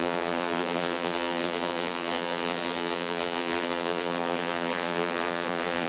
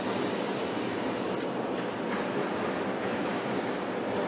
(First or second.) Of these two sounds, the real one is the second